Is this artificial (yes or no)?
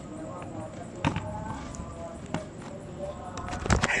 no